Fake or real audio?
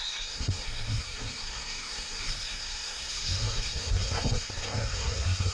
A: fake